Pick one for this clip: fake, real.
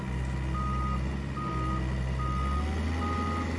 real